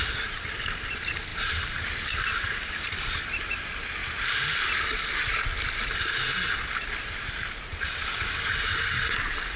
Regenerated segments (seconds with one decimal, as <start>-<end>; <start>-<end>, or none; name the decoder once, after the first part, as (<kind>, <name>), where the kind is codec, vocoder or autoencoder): 1.3-3.6 (vocoder, BigVGAN v2)